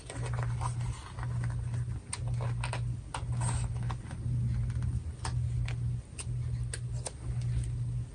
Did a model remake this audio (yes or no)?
no